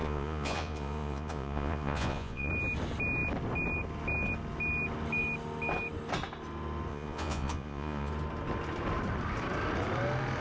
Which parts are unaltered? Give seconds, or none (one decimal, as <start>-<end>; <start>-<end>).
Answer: 2.5-6.9; 8.1-10.4

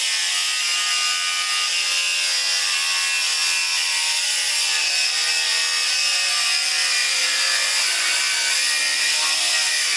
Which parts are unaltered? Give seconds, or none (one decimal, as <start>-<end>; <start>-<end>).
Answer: 0.0-7.0; 8.2-10.0